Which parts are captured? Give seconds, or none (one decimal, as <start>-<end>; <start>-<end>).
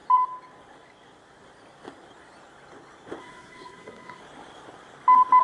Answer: 0.0-3.2; 4.2-5.4